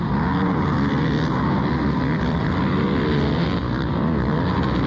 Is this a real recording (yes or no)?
yes